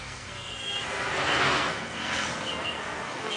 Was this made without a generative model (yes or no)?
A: no